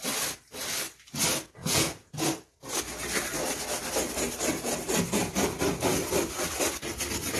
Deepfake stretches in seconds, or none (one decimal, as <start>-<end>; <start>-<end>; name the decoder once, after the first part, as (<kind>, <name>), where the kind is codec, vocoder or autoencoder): 1.6-2.2 (vocoder, Vocos)